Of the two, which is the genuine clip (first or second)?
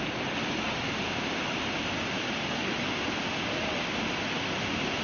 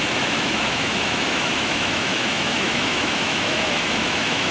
first